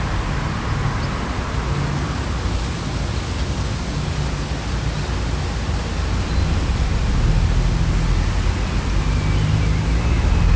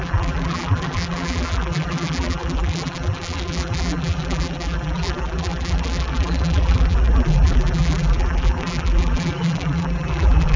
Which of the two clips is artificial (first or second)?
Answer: second